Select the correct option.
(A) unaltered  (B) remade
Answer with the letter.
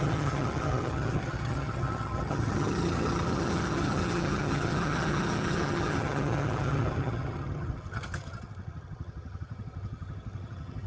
B